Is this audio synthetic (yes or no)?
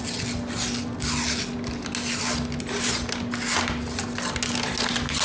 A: no